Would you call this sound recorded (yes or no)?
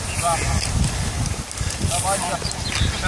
yes